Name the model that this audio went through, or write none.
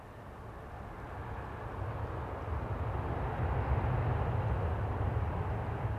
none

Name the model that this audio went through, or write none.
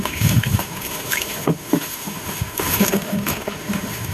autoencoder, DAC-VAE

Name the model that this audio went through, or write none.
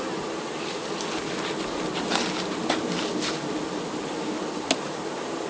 none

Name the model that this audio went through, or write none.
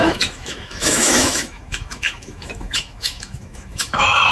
autoencoder, DAC-VAE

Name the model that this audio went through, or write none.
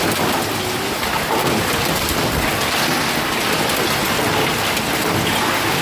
none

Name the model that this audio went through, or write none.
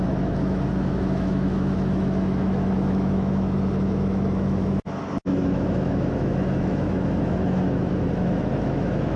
autoencoder, DAC-VAE